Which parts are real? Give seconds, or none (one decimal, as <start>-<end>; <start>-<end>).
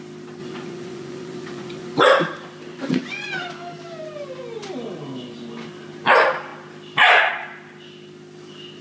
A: 0.0-0.4; 2.0-2.7; 3.3-8.8